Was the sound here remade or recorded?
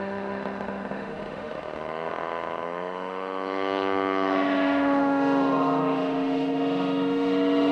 remade